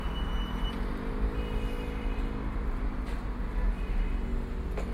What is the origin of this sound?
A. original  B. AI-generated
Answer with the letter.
A